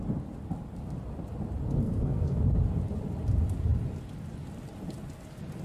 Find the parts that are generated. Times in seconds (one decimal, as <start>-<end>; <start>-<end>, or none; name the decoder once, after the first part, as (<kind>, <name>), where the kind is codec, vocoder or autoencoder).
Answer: 1.8-2.4 (codec, SNAC)